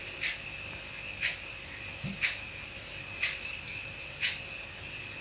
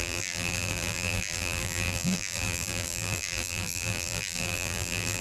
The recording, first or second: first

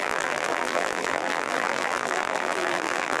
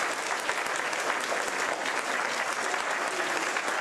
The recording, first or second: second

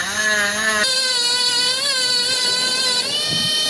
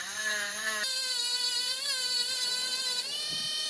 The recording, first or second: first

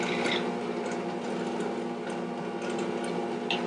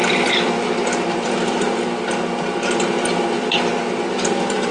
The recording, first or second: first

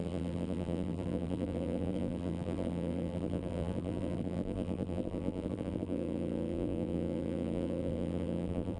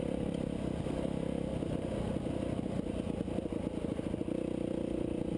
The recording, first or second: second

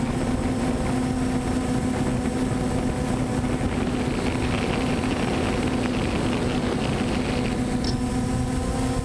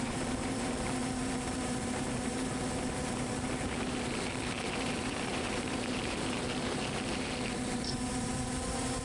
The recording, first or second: first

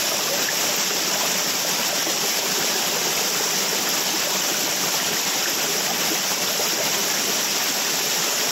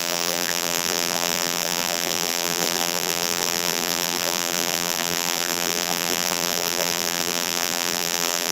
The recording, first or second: first